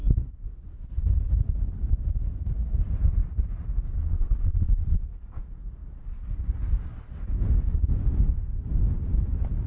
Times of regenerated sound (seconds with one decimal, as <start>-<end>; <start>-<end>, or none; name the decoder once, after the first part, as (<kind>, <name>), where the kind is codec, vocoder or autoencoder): 4.0-5.0 (vocoder, Vocos)